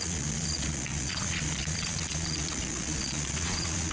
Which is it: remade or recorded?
remade